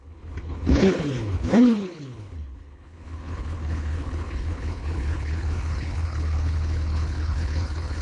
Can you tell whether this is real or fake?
fake